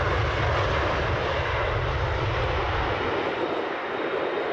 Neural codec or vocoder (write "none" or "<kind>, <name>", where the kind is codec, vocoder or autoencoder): none